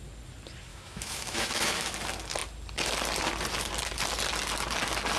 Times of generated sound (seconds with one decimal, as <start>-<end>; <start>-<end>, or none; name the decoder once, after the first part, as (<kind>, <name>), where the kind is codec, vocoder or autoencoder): 0.7-1.9 (autoencoder, DAC-VAE)